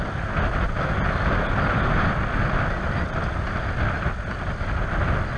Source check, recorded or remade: recorded